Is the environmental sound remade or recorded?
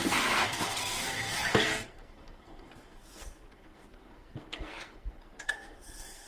remade